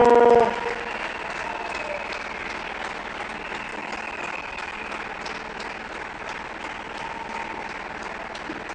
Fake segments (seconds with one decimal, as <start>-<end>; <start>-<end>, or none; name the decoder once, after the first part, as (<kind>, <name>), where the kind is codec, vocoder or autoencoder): 3.7-4.8 (codec, DAC)

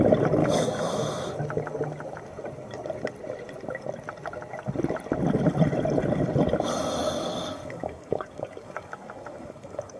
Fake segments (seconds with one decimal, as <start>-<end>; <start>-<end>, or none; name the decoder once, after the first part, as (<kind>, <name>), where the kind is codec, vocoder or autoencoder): 0.4-0.9 (codec, DAC); 7.0-10.0